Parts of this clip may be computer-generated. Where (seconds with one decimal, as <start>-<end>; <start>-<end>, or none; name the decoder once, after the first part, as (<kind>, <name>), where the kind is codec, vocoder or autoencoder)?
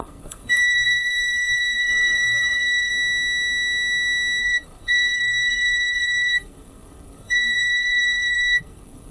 0.0-2.9 (codec, SNAC); 4.4-9.1